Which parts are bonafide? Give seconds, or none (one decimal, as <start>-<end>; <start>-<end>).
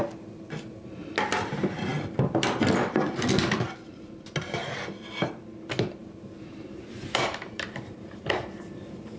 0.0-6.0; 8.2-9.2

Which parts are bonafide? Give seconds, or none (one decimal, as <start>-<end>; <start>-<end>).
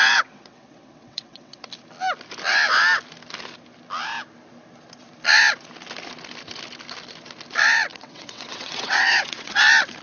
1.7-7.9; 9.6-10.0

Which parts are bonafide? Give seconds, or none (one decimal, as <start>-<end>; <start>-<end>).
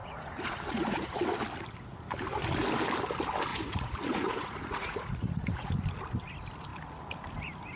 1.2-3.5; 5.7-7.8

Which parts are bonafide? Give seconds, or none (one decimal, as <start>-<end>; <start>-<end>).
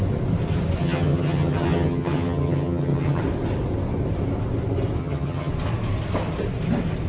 0.0-0.8; 3.2-5.0; 5.5-7.1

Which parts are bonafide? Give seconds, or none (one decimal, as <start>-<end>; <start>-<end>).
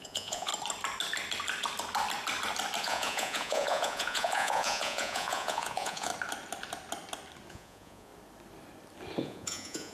0.5-2.8; 6.1-7.5; 8.1-9.2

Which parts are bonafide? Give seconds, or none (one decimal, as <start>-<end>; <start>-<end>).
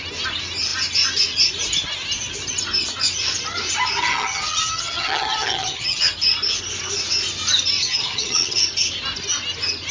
0.0-4.0; 6.1-7.8; 8.6-9.9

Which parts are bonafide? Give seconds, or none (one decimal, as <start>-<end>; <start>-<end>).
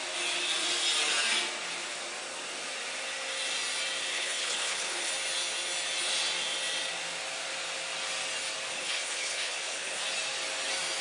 0.0-4.1; 5.1-8.7; 10.0-11.0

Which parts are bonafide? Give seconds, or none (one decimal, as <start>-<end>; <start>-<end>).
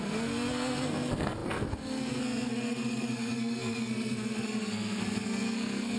none